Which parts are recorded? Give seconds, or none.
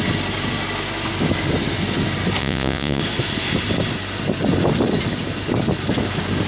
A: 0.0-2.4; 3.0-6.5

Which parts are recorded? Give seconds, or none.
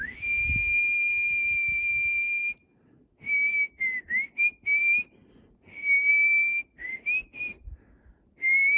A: 0.0-8.8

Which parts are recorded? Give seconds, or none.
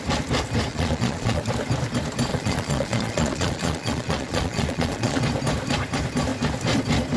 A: 0.0-0.7; 1.4-2.3; 5.2-7.2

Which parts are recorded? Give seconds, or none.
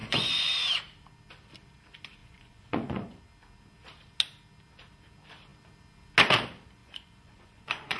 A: 0.5-2.2; 3.2-6.8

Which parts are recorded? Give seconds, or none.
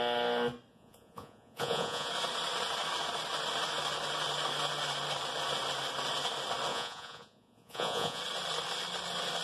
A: 0.0-0.7; 2.1-6.7; 8.2-9.4